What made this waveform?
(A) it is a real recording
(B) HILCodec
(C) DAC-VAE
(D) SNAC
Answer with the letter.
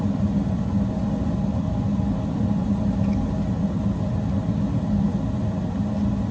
A